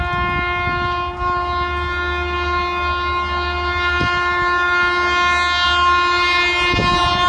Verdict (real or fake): real